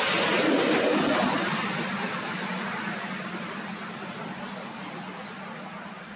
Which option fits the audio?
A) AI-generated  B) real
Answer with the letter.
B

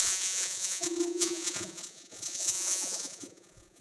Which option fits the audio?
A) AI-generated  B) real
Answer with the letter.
A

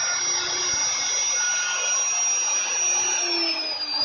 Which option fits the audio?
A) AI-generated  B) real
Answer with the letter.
B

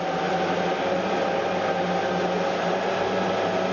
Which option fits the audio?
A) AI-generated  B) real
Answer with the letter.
B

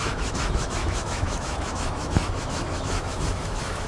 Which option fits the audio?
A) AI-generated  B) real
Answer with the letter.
A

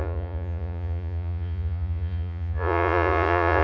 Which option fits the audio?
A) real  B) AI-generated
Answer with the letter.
B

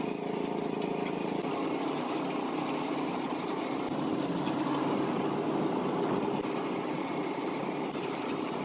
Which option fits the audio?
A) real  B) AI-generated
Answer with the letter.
A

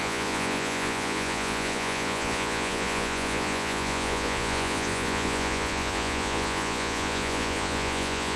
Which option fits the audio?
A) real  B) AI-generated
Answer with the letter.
B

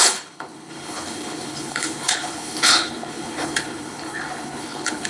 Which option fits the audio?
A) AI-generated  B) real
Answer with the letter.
A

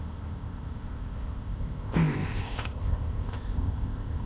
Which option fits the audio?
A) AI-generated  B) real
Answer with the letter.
A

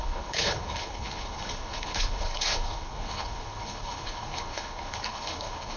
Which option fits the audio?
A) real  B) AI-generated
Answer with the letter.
B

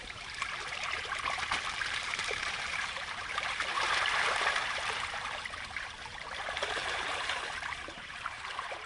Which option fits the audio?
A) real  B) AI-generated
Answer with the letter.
B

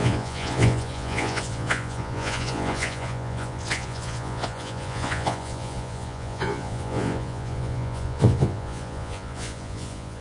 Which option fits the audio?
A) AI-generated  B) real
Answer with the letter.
A